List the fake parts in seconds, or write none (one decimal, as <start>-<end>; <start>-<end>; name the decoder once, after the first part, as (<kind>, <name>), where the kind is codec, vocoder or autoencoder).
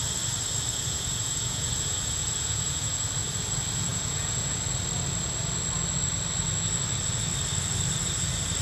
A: 0.7-3.1 (vocoder, Vocos); 3.9-4.6